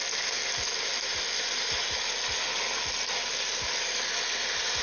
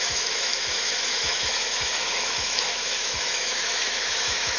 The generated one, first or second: second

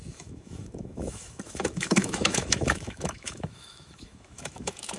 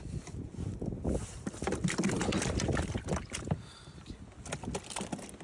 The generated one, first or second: first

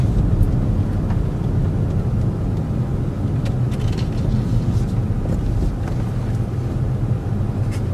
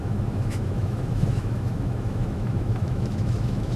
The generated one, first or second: second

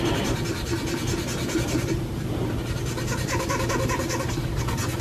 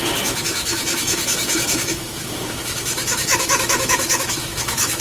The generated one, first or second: second